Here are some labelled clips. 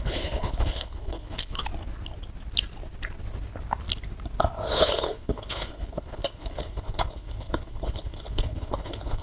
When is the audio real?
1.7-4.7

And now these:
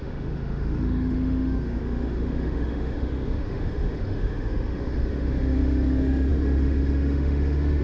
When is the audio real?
none